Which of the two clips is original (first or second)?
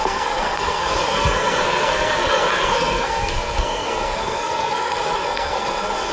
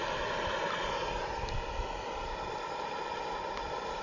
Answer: second